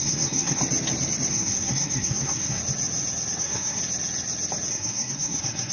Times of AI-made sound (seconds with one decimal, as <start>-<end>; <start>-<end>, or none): 0.0-0.6; 1.3-2.6; 3.4-3.8; 4.7-5.7